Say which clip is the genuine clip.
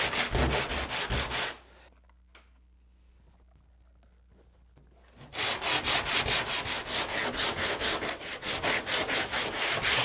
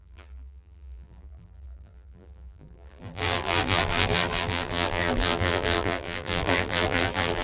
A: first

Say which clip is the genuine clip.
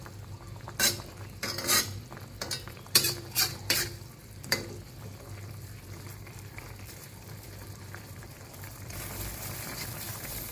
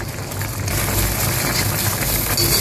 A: second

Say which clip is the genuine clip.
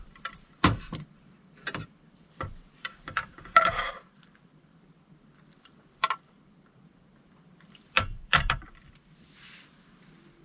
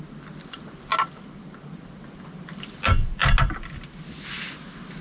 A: second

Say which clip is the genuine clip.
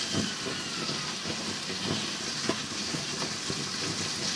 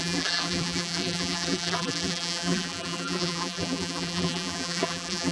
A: first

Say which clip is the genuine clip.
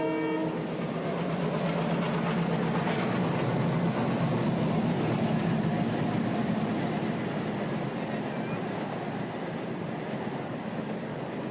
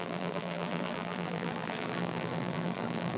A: first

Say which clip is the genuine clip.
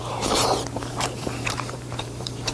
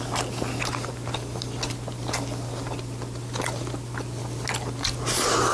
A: second